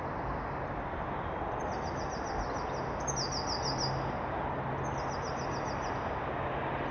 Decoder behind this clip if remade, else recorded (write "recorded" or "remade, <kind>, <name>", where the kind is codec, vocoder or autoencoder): recorded